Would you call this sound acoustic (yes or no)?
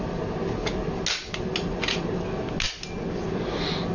yes